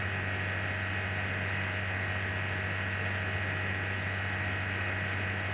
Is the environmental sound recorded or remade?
recorded